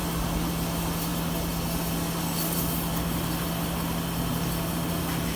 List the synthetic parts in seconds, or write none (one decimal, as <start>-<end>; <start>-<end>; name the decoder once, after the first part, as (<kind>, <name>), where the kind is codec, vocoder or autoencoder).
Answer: none